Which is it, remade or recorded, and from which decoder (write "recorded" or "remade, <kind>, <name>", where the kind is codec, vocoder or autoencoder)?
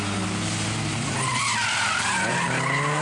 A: recorded